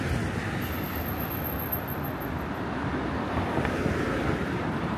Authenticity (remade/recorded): recorded